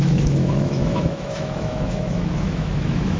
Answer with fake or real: fake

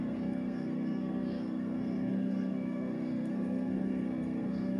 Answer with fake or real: fake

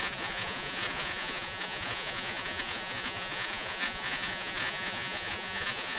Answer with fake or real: fake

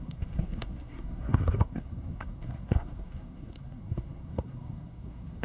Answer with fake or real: fake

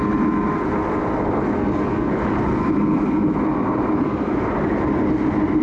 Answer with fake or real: real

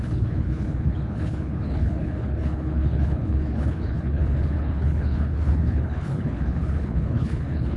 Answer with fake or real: fake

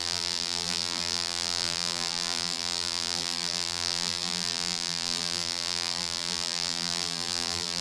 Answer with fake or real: fake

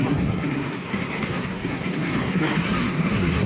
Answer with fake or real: fake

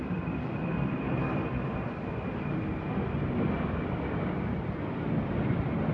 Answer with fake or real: fake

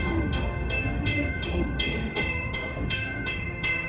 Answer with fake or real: fake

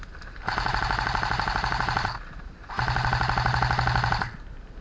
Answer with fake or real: real